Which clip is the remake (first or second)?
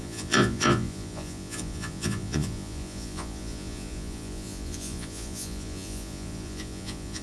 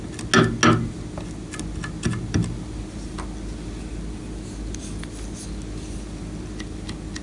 first